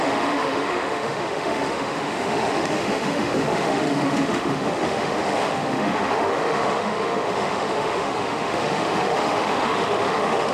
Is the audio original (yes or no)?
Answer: no